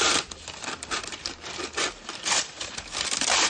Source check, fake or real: fake